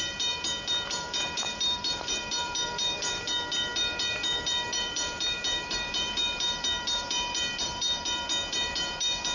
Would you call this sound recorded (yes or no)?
no